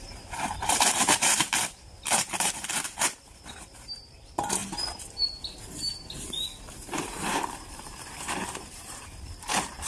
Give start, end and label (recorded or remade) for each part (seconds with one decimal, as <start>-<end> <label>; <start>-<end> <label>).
0.0-4.6 remade; 4.6-6.7 recorded; 6.7-9.9 remade